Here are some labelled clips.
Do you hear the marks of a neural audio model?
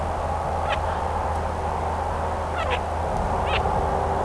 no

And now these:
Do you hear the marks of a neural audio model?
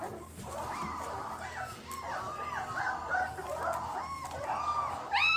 no